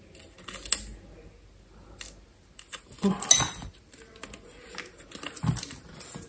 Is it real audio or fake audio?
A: real